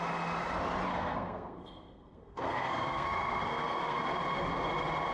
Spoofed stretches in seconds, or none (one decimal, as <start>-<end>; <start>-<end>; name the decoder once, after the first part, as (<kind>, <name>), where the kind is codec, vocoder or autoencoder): 0.9-4.0 (codec, SNAC)